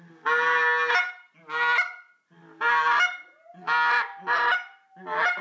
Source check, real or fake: real